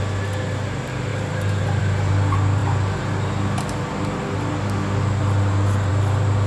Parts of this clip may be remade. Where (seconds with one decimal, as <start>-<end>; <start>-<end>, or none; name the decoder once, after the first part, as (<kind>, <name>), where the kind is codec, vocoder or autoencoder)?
1.1-1.8 (vocoder, BigVGAN v2)